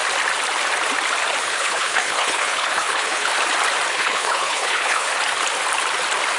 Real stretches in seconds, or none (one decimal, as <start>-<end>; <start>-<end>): 0.0-1.4; 3.3-3.9; 5.1-6.4